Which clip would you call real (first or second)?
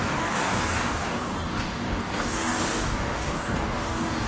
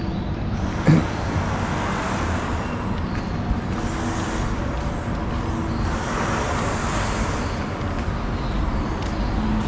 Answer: second